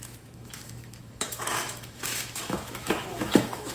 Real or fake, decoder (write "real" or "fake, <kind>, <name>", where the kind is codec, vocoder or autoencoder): fake, autoencoder, DAC-VAE